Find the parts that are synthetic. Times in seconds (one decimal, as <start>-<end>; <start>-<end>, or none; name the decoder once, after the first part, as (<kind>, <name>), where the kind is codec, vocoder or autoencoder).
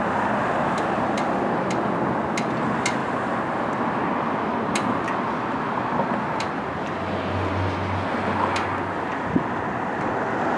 none